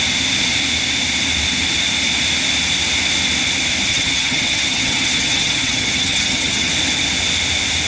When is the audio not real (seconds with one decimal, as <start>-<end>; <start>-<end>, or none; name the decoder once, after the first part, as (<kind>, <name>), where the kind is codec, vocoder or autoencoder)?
3.9-6.7 (vocoder, HiFi-GAN)

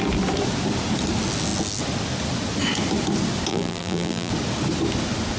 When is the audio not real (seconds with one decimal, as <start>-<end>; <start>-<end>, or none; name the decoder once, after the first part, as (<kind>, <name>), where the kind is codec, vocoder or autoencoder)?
3.5-4.3 (vocoder, BigVGAN v2)

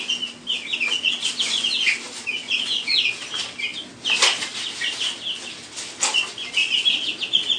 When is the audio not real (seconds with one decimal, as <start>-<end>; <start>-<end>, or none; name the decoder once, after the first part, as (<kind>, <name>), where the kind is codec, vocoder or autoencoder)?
2.4-3.1 (vocoder, Vocos)

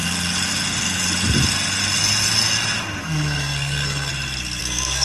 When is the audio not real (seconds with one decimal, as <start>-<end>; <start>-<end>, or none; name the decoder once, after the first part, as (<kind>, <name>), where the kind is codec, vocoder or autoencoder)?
3.0-4.1 (codec, SNAC); 4.6-5.0